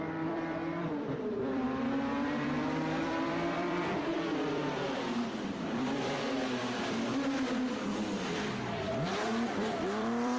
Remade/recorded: remade